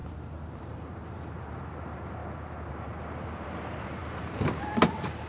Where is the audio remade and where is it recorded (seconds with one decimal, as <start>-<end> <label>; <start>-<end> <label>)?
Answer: 0.0-0.6 recorded; 0.6-2.2 remade; 2.2-2.7 recorded; 2.7-5.3 remade